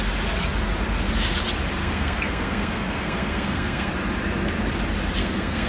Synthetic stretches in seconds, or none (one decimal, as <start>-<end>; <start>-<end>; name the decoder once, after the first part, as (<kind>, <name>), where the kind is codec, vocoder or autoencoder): 1.8-3.9 (codec, SNAC); 5.2-5.7